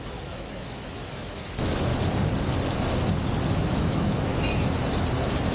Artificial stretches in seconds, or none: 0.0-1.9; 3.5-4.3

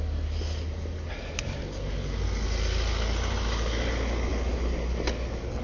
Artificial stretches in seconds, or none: none

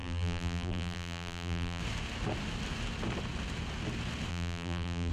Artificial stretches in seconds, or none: 0.0-1.8; 4.3-5.1